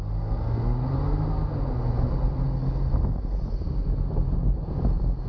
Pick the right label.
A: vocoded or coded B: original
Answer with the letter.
B